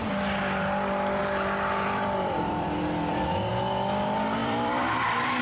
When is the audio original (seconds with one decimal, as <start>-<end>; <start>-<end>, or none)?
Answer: 0.0-1.2; 3.5-4.4